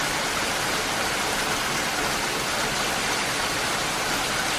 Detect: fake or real real